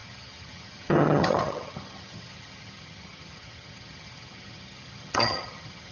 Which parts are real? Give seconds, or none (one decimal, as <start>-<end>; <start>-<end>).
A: none